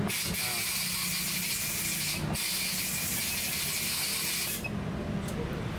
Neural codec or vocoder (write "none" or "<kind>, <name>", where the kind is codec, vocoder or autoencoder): none